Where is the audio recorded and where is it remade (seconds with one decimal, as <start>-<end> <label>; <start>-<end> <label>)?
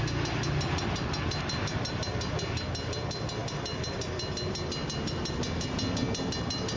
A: 0.0-6.8 recorded